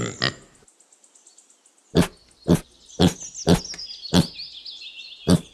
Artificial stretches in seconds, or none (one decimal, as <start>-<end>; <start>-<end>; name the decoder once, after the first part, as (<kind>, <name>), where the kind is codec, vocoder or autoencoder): none